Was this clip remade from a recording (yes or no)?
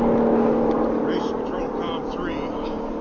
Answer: no